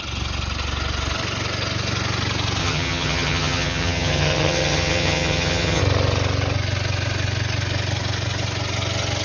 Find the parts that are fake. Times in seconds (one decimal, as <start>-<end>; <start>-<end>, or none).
2.6-5.8